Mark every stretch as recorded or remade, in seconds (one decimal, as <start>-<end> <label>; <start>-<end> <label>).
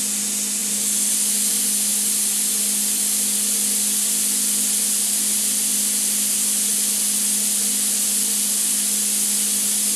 0.0-10.0 recorded